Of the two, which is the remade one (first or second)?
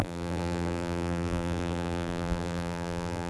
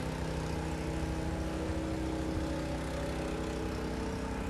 first